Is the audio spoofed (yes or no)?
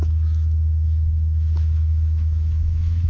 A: yes